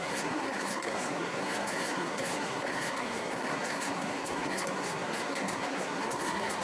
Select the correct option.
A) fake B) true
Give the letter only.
A